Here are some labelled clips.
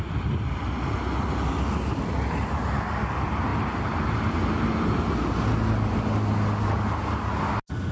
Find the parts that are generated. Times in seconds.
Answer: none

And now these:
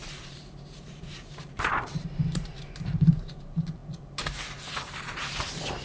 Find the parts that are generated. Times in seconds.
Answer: 0.0-5.8

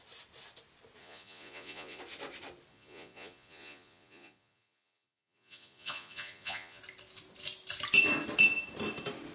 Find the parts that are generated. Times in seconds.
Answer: 1.0-2.0; 2.7-6.8

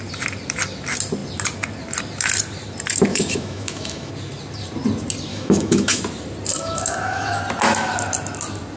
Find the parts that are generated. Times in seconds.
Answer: 3.1-4.1; 5.3-6.0; 6.5-7.4

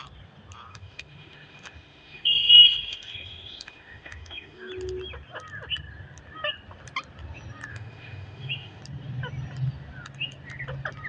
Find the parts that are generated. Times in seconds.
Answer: 0.7-4.7; 7.7-8.8

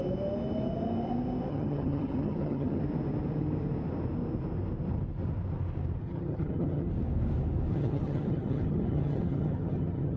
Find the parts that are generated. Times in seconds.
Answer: 1.5-2.8; 6.0-6.9; 7.7-10.2

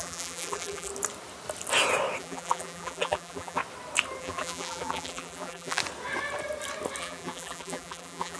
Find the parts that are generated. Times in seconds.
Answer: 0.0-0.9; 2.2-3.6; 4.2-5.8; 7.0-8.4